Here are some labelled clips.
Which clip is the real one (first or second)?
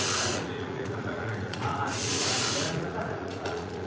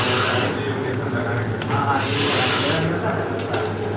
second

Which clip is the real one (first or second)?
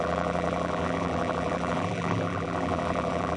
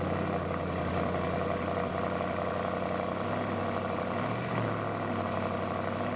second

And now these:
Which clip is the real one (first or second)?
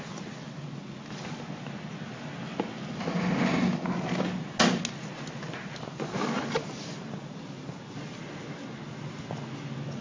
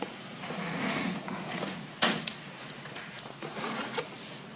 first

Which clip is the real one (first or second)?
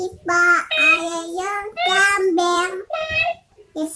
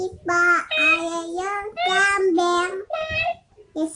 second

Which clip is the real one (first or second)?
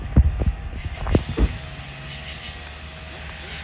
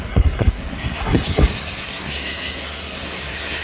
first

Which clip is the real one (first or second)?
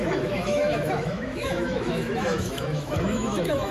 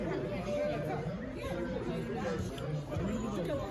second